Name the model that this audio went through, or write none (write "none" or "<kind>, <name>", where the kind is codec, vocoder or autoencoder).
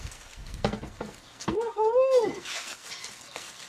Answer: codec, SNAC